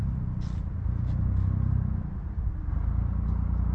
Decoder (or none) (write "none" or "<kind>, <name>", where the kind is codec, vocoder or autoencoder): none